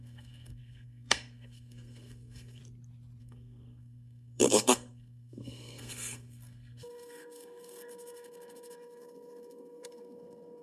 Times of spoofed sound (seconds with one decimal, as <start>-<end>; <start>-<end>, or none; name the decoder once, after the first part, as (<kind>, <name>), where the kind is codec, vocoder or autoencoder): 0.0-2.6 (codec, SNAC); 3.2-10.6